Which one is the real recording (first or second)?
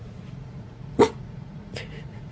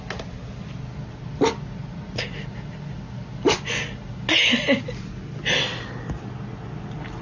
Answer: second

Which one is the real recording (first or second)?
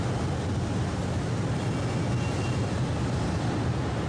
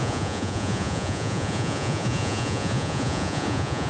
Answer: first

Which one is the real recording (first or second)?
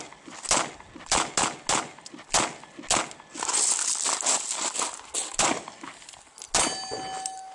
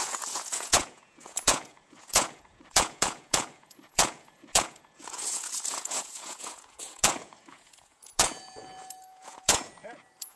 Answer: first